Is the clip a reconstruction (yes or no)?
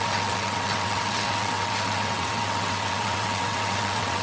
yes